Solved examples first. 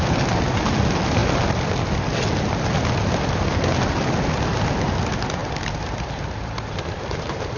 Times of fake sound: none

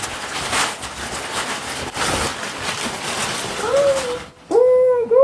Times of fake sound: none

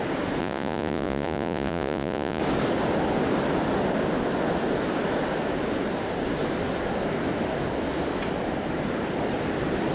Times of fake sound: 0.4-2.4 (vocoder, Vocos)

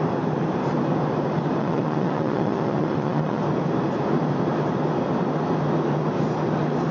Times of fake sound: 1.6-3.4 (vocoder, Vocos)

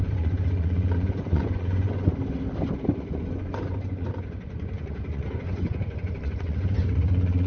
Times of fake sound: 0.0-2.1 (vocoder, Vocos); 2.9-7.5

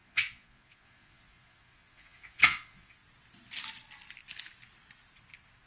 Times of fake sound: 0.0-3.0 (vocoder, Vocos)

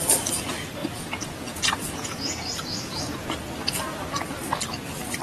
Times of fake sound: 0.8-2.2 (vocoder, Vocos); 2.7-3.3

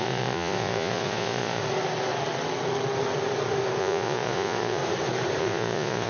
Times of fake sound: 0.0-1.6 (vocoder, Vocos); 3.8-4.8; 5.4-6.1